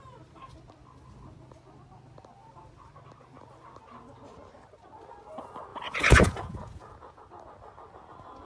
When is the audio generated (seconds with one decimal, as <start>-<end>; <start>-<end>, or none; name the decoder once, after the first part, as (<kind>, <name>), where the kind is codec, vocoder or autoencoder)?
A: 5.7-7.2 (vocoder, Vocos)